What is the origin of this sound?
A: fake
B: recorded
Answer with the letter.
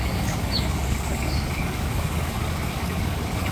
A